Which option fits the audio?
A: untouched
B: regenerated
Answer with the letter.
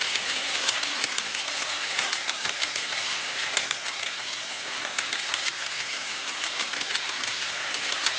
B